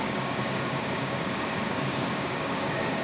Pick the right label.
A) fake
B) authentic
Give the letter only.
A